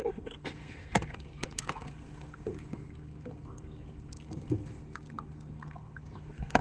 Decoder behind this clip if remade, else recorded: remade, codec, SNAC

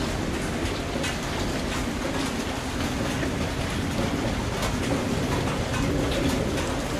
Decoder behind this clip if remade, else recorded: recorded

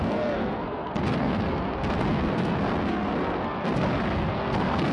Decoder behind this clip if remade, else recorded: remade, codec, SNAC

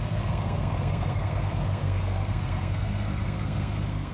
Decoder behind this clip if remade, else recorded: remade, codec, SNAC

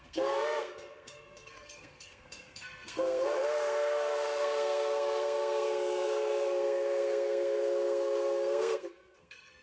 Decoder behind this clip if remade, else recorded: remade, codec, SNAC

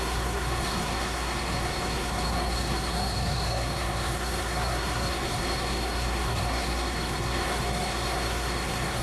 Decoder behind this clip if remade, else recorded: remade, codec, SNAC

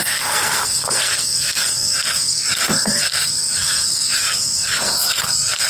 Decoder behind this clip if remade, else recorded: remade, codec, SNAC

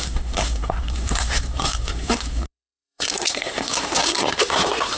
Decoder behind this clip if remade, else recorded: remade, codec, SNAC